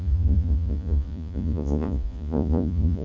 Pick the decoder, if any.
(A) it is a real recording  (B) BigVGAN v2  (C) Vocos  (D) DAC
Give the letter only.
C